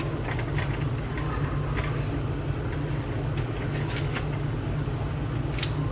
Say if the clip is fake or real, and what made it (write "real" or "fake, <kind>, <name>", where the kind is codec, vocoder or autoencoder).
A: real